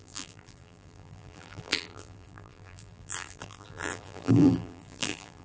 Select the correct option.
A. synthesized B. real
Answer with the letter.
A